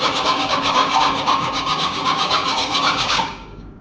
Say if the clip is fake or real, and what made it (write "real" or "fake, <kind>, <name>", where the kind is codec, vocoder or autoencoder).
fake, codec, DAC